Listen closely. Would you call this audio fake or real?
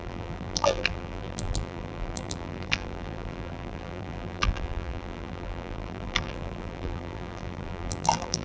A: fake